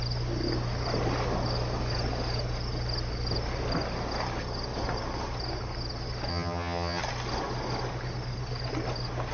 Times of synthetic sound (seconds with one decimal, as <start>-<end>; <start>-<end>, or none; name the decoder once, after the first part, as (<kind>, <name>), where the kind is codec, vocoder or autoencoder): 6.3-7.0 (vocoder, HiFi-GAN)